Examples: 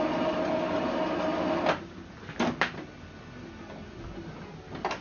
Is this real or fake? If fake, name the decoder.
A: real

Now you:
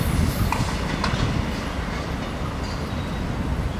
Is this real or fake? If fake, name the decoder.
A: real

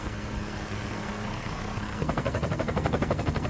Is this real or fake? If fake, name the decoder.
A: fake, codec, SNAC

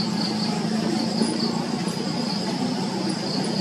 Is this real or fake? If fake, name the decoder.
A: real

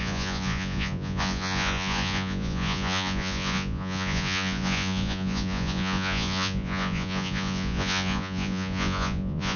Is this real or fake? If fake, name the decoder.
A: fake, vocoder, Vocos